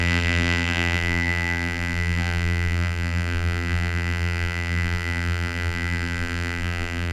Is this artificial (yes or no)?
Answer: yes